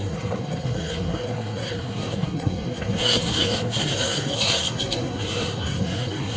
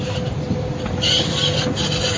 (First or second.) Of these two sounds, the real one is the second